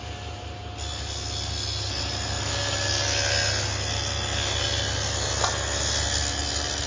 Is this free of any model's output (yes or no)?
yes